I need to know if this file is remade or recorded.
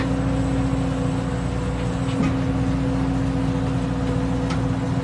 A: recorded